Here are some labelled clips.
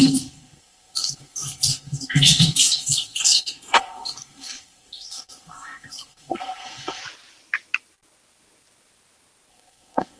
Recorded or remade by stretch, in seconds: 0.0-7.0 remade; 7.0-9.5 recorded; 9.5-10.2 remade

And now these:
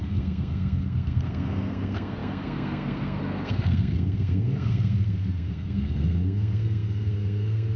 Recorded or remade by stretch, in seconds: 0.0-7.8 remade